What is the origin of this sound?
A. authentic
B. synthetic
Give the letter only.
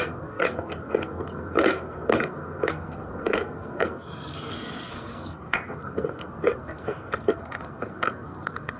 B